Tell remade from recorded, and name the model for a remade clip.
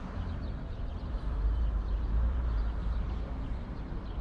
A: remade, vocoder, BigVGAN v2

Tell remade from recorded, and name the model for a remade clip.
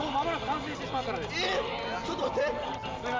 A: recorded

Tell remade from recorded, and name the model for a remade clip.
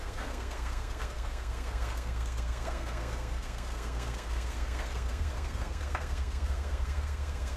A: remade, codec, SNAC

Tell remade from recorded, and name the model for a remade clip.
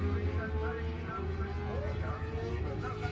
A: recorded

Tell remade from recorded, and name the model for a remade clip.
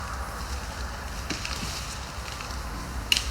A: recorded